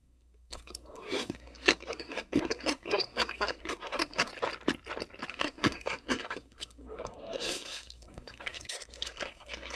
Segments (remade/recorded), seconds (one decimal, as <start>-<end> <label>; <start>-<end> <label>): 0.0-4.3 remade; 4.3-5.3 recorded; 5.3-9.8 remade